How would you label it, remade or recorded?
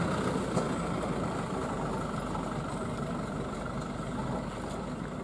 recorded